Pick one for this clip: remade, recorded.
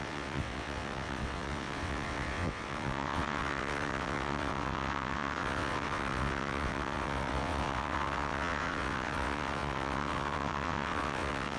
remade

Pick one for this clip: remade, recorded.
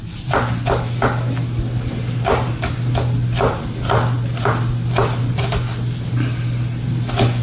recorded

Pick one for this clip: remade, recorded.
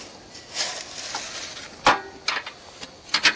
recorded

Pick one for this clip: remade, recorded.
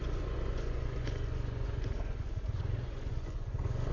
remade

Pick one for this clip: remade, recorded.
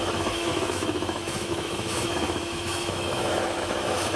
remade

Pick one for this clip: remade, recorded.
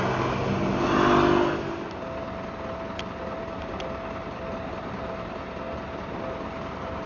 recorded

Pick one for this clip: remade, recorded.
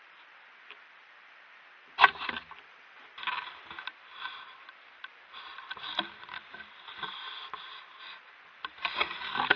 recorded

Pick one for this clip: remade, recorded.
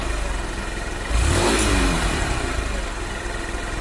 remade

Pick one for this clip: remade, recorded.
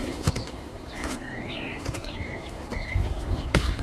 remade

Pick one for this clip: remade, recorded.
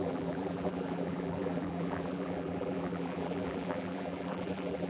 remade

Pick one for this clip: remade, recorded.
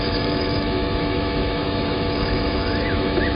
remade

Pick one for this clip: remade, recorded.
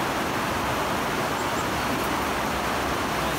recorded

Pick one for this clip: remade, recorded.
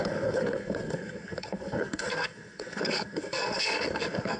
remade